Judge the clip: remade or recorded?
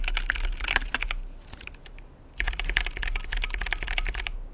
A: recorded